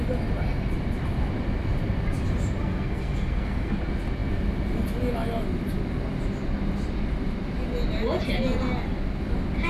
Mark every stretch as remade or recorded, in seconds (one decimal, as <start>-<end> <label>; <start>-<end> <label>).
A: 0.0-2.6 recorded; 2.6-3.8 remade; 3.8-9.7 recorded